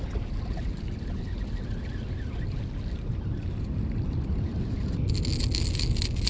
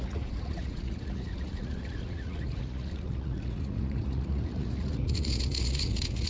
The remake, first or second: second